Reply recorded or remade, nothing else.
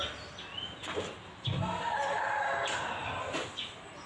recorded